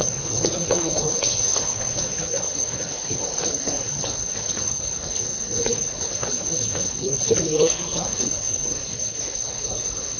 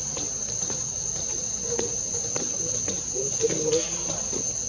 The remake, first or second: first